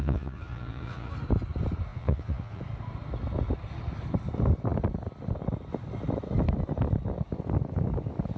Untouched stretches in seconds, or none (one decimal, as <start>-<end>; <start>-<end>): 1.1-1.9; 2.6-8.4